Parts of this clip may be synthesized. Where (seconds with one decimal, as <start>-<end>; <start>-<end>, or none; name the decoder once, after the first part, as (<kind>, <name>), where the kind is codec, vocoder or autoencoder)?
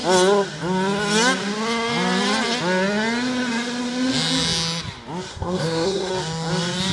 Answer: 5.3-6.1 (codec, SNAC)